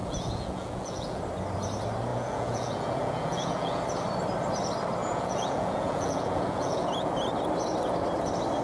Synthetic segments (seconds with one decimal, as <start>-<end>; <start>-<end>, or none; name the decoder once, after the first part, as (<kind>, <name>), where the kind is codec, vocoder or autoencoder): 0.0-1.2 (vocoder, Vocos); 2.1-3.8; 5.0-7.1